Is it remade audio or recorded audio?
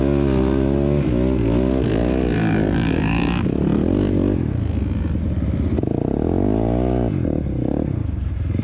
recorded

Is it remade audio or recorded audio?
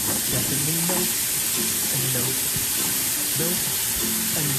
recorded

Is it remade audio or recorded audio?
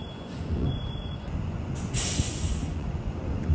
remade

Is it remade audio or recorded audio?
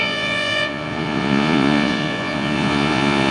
remade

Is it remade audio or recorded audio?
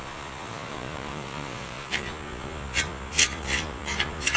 remade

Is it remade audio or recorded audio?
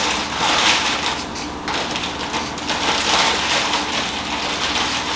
recorded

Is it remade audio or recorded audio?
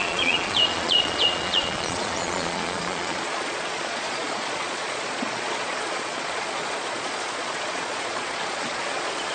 remade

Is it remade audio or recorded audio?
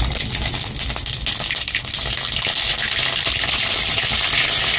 recorded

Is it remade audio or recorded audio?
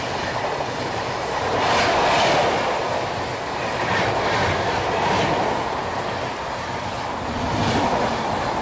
recorded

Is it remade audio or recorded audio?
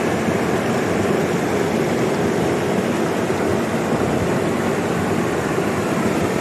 recorded